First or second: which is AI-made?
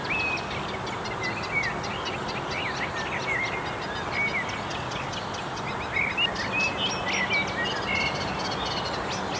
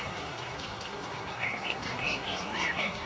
second